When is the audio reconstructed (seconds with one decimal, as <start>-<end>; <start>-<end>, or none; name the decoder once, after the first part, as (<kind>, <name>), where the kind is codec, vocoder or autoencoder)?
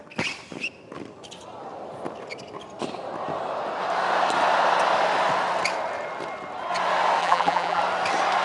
7.2-7.8 (vocoder, BigVGAN v2)